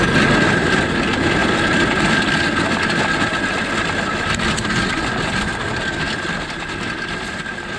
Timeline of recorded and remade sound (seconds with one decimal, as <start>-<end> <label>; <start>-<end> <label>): 0.0-7.8 recorded